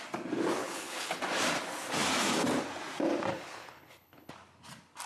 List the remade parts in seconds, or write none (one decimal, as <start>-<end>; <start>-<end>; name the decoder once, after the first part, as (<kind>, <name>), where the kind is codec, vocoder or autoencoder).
0.6-1.2 (codec, HILCodec); 3.3-4.3